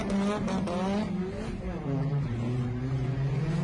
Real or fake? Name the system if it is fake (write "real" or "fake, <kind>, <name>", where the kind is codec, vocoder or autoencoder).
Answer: real